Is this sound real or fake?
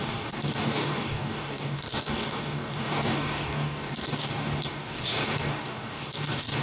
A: fake